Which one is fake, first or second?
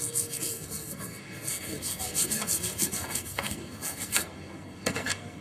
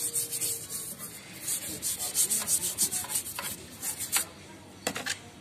first